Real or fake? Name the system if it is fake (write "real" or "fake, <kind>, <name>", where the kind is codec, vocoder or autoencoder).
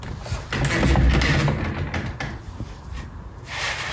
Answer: real